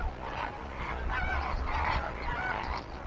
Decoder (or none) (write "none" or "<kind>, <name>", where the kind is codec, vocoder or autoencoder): vocoder, Vocos